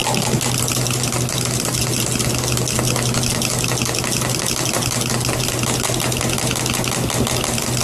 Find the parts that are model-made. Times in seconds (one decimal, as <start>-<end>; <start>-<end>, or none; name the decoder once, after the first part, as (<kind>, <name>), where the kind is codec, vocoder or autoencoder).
none